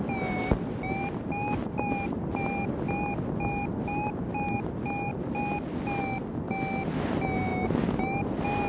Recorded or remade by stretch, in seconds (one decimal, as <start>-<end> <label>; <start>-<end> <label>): 0.0-8.7 recorded